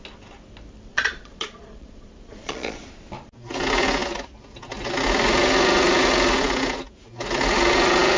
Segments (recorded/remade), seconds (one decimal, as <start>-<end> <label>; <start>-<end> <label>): 0.0-0.9 recorded; 0.9-2.8 remade; 2.8-8.2 recorded